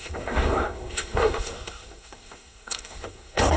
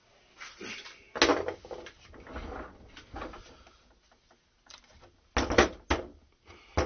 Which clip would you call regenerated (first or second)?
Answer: first